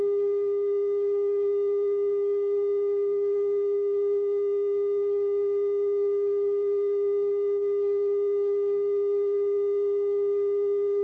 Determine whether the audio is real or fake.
fake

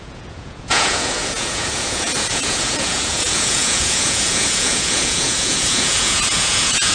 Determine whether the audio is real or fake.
fake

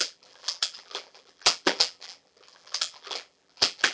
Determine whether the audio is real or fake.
fake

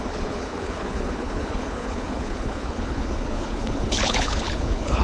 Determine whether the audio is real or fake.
fake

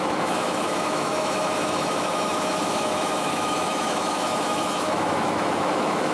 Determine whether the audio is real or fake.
fake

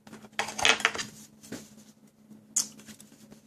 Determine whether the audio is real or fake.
real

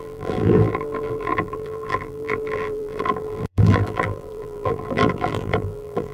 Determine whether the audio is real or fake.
fake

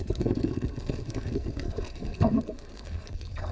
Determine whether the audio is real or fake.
fake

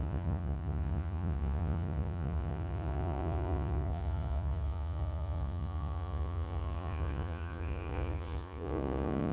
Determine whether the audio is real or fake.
fake